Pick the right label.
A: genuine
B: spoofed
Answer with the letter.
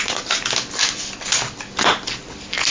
A